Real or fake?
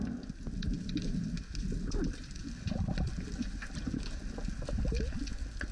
real